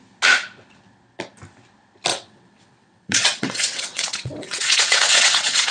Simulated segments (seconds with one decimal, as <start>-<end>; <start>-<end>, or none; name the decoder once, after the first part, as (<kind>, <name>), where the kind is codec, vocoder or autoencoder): 2.1-5.7 (vocoder, WaveNeXt)